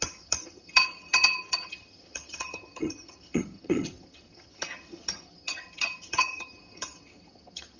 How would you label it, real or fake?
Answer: fake